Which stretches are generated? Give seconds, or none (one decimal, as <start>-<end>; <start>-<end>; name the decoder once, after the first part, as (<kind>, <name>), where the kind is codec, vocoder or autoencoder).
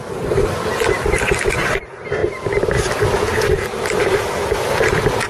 none